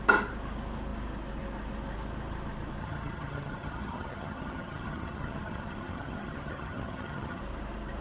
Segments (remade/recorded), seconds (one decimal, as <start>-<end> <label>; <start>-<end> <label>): 0.0-2.8 recorded; 2.8-7.4 remade; 7.4-8.0 recorded